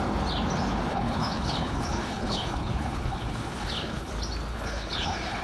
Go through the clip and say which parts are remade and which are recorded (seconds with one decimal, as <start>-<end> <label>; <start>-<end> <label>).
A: 0.0-0.9 recorded; 0.9-4.1 remade; 4.1-4.5 recorded; 4.5-5.4 remade